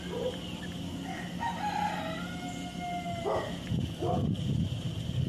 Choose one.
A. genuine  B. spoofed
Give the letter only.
A